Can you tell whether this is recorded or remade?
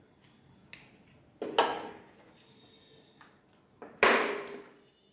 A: recorded